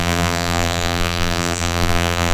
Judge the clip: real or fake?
fake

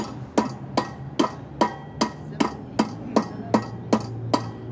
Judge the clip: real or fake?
real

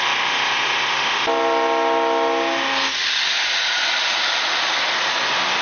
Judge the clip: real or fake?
real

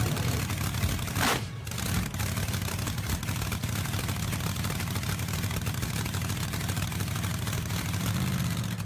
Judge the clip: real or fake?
fake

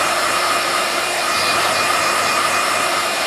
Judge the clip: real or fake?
fake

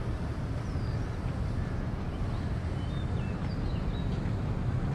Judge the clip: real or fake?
real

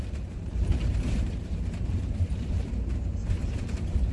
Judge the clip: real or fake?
fake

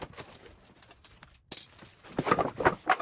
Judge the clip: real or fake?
real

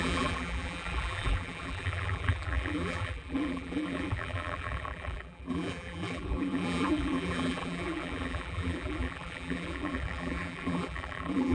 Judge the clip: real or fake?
fake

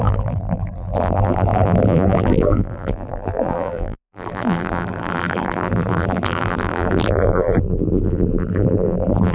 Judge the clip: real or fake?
fake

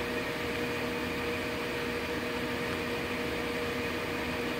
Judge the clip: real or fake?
fake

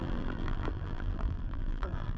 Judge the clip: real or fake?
fake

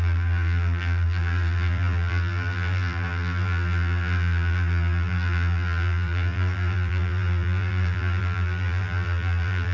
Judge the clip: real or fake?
fake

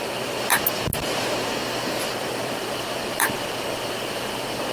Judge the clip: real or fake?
fake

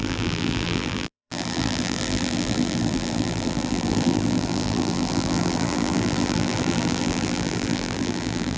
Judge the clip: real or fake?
fake